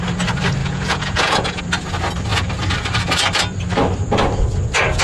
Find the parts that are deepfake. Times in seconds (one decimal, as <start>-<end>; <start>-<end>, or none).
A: 0.6-1.6